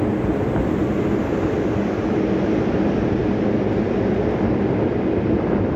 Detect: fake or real real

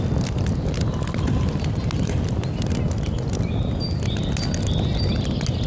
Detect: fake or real real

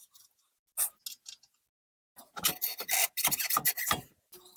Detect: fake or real real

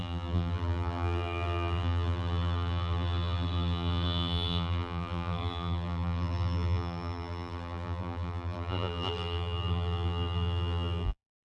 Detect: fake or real fake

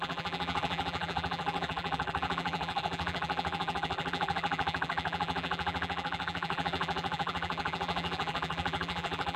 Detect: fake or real fake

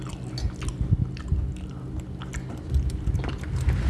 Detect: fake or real real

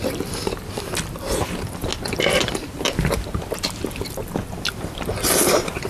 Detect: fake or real real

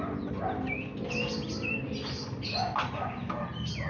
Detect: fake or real real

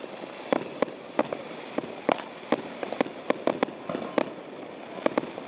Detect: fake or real real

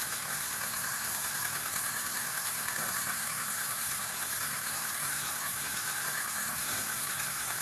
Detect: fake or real fake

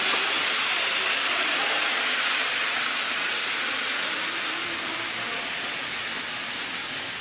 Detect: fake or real real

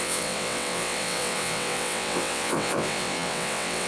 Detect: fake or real fake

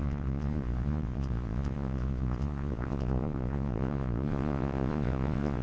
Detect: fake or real fake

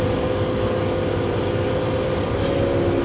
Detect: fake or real real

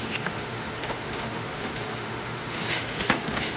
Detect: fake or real fake